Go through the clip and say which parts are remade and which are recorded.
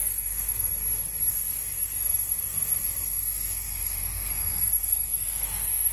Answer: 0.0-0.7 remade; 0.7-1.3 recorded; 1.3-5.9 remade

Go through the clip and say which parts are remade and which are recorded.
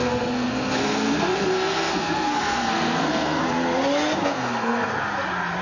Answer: 0.0-3.4 remade; 3.4-4.2 recorded; 4.2-4.9 remade; 4.9-5.6 recorded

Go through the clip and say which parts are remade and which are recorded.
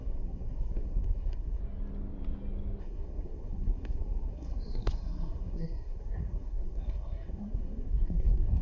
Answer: 0.0-1.6 remade; 1.6-2.8 recorded; 2.8-8.6 remade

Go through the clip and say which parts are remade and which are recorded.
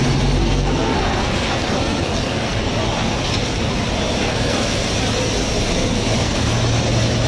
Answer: 0.0-0.4 recorded; 0.4-2.7 remade; 2.7-4.2 recorded; 4.2-4.9 remade; 4.9-5.7 recorded; 5.7-6.5 remade; 6.5-7.3 recorded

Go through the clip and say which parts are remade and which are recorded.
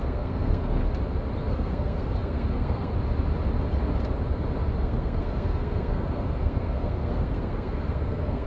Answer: 0.0-0.8 remade; 0.8-1.5 recorded; 1.5-2.9 remade; 2.9-4.8 recorded; 4.8-8.5 remade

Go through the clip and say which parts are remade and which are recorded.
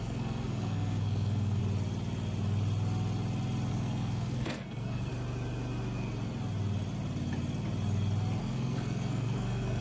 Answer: 0.0-1.6 remade; 1.6-3.7 recorded; 3.7-5.1 remade; 5.1-8.4 recorded; 8.4-9.8 remade